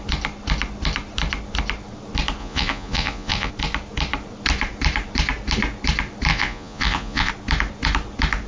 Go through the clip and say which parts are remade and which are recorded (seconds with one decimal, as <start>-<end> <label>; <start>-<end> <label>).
0.0-2.4 recorded; 2.4-3.5 remade; 3.5-6.3 recorded; 6.3-7.3 remade; 7.3-8.5 recorded